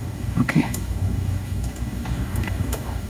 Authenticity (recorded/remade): remade